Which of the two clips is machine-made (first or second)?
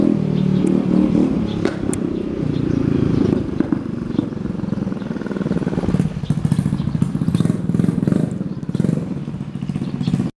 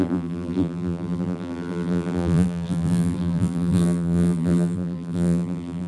second